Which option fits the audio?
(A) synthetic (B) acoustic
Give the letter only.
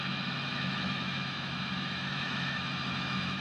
A